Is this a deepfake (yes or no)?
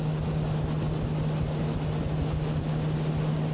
no